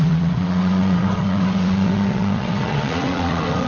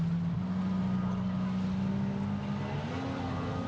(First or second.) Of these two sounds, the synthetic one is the first